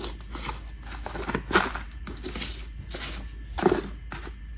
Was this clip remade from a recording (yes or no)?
no